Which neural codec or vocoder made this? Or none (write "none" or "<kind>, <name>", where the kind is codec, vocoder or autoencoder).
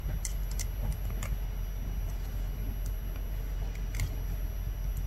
none